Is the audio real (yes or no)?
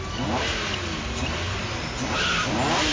yes